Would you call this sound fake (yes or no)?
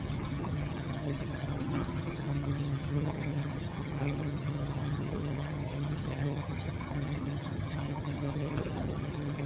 yes